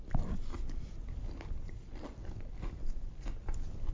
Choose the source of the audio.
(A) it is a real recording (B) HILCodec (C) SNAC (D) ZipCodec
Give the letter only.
A